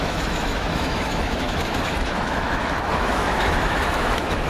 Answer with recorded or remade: remade